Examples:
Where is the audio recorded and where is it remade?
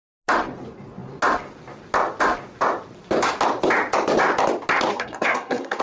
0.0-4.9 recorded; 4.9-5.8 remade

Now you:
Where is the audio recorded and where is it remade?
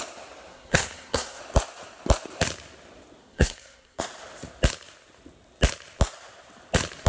0.0-0.5 recorded; 0.5-1.4 remade; 1.4-3.2 recorded; 3.2-4.0 remade; 4.0-7.1 recorded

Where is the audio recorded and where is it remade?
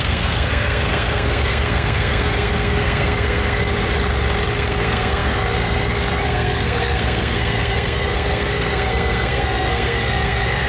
0.0-3.7 remade; 3.7-4.5 recorded; 4.5-10.7 remade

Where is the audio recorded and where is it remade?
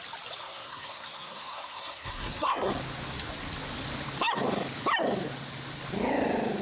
0.0-0.4 recorded; 0.4-2.7 remade; 2.7-6.6 recorded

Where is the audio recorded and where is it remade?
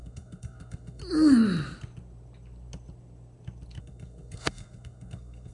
0.0-1.0 remade; 1.0-3.8 recorded; 3.8-5.5 remade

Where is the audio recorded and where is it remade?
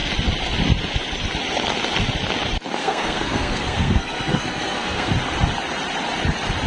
0.0-2.8 recorded; 2.8-5.1 remade; 5.1-6.7 recorded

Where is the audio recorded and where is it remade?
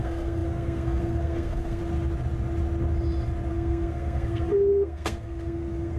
0.0-1.8 remade; 1.8-3.5 recorded; 3.5-6.0 remade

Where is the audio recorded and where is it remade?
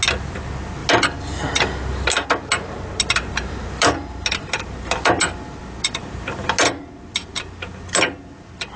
0.0-8.8 recorded